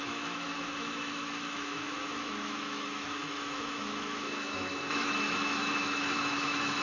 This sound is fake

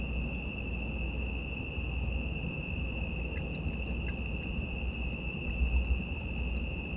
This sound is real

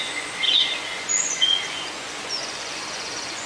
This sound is fake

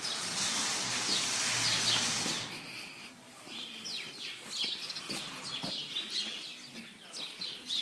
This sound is real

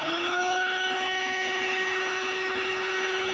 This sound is fake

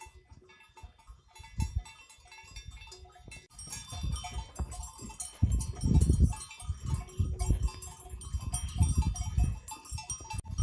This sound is real